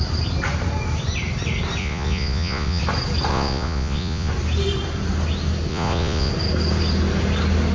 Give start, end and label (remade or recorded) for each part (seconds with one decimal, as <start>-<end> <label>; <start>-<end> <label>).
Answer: 0.0-1.8 recorded; 1.8-2.8 remade; 2.8-3.3 recorded; 3.3-4.3 remade; 4.3-5.7 recorded; 5.7-6.3 remade; 6.3-7.7 recorded